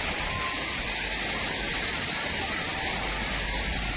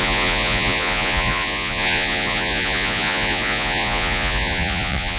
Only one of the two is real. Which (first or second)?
first